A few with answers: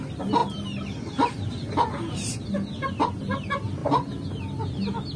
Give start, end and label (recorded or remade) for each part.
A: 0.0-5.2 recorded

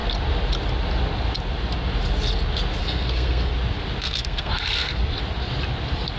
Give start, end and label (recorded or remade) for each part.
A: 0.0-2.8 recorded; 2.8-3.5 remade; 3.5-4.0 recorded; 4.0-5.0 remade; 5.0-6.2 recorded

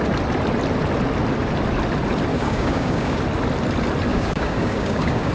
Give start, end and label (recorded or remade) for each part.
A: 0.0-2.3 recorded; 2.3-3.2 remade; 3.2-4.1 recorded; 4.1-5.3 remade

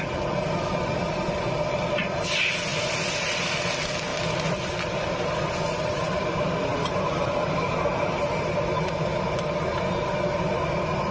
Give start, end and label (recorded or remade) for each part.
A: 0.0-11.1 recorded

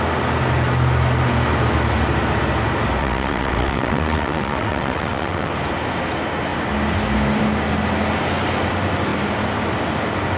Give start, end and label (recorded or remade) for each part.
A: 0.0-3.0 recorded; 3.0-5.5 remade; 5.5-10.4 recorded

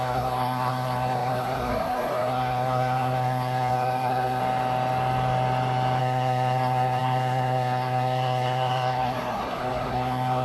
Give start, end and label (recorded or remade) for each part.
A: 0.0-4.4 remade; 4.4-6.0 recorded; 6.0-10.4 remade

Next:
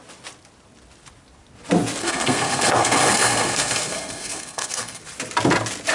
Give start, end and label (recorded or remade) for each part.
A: 0.0-2.0 recorded; 2.0-5.0 remade; 5.0-5.9 recorded